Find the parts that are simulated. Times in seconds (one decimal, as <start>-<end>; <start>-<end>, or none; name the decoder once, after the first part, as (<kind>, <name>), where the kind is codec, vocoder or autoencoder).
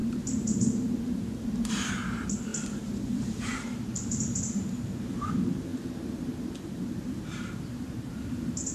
0.0-5.7 (vocoder, BigVGAN v2); 6.6-8.7